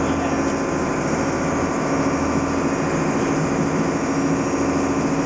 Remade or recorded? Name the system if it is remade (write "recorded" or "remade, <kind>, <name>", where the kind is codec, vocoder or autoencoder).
recorded